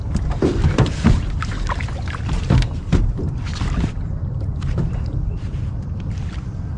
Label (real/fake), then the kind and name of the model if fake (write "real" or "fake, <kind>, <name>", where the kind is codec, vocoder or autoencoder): fake, vocoder, BigVGAN v2